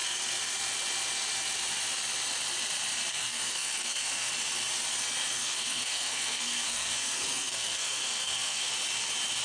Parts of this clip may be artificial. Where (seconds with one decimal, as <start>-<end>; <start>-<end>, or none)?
3.1-4.3; 5.4-8.7